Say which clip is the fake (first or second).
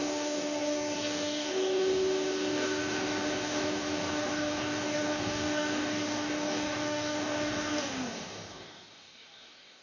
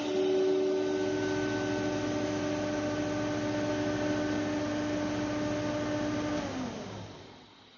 first